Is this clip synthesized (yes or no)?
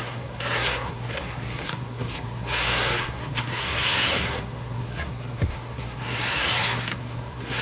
yes